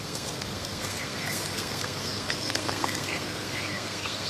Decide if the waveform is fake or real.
fake